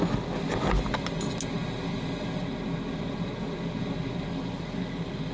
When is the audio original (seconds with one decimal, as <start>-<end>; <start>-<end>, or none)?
0.0-5.3